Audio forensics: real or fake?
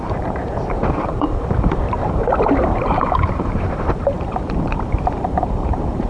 fake